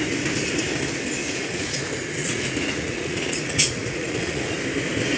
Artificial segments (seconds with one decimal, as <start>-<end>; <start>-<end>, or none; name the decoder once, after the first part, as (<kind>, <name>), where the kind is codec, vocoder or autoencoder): 1.2-1.8 (vocoder, Vocos); 2.2-4.5